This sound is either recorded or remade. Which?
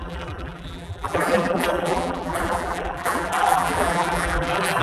remade